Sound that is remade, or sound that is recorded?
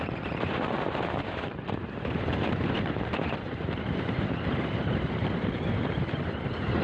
remade